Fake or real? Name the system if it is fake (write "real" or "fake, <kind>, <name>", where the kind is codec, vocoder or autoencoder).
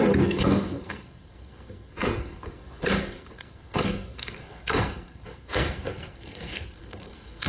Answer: fake, codec, SNAC